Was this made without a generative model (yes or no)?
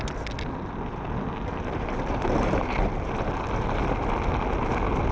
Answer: yes